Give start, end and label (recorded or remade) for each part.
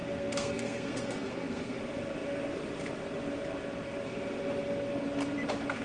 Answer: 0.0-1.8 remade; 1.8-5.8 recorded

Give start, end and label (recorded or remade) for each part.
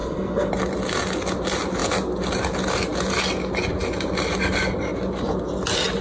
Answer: 0.0-0.5 remade; 0.5-6.0 recorded